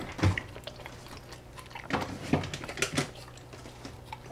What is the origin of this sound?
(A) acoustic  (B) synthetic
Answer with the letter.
A